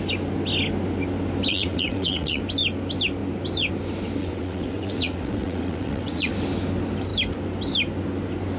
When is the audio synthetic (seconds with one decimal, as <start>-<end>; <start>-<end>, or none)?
1.5-2.4; 4.2-6.3